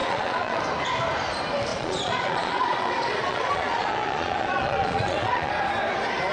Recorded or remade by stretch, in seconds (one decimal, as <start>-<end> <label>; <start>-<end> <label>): 0.0-0.6 remade; 0.6-1.7 recorded; 1.7-5.5 remade; 5.5-6.3 recorded